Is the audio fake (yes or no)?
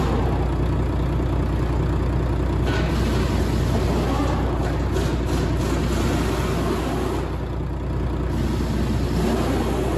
no